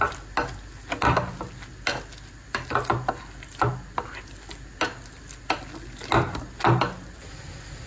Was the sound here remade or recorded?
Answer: recorded